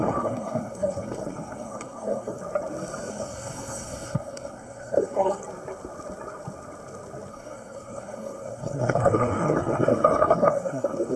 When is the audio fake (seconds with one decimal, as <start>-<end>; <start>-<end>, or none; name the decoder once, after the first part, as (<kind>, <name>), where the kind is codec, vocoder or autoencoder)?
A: 0.0-2.4 (codec, SNAC); 3.1-5.4; 7.3-11.2